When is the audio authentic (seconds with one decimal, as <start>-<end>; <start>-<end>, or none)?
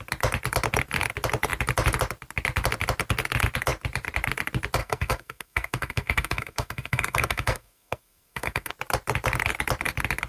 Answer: 0.0-4.8; 8.7-10.3